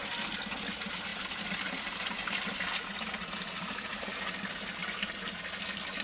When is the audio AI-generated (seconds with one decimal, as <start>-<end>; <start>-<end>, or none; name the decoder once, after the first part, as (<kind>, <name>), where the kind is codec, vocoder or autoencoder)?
none

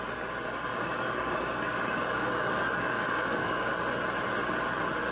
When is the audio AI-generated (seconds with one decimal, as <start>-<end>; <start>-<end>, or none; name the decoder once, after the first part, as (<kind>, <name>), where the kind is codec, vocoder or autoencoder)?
0.7-3.7 (codec, DAC)

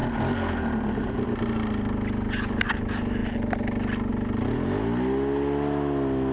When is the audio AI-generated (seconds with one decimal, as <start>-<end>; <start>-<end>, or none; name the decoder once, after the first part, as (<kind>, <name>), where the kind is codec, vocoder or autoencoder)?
none